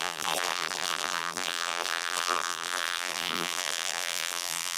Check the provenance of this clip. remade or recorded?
remade